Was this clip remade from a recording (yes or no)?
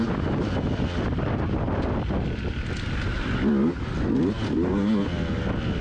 no